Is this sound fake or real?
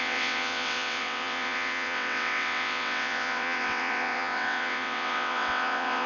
fake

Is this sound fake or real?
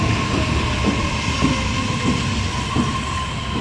real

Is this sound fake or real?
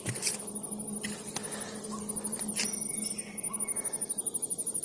real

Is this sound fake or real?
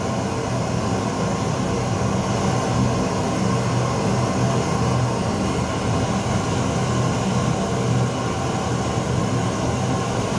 real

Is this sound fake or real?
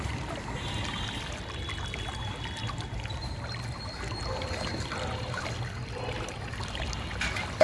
real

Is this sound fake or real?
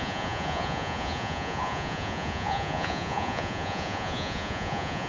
fake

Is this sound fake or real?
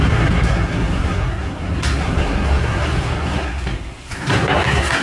fake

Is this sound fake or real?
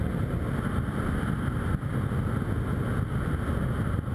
real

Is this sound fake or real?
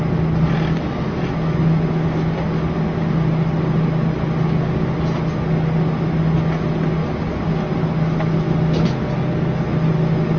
real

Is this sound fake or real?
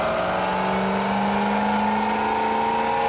real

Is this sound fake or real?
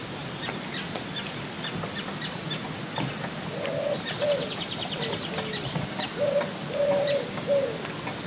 real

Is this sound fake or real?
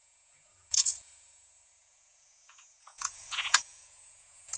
fake